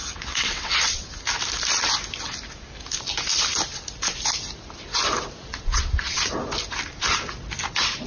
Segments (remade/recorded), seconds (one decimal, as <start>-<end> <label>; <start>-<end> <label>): 0.0-1.1 remade; 1.1-5.5 recorded; 5.5-6.2 remade; 6.2-8.1 recorded